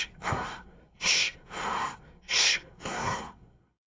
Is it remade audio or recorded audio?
remade